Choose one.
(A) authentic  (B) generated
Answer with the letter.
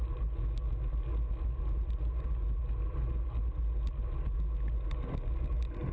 A